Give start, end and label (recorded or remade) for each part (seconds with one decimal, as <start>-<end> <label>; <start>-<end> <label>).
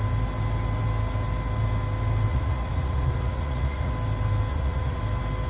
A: 0.0-2.3 recorded; 2.3-3.9 remade; 3.9-4.5 recorded; 4.5-5.0 remade; 5.0-5.5 recorded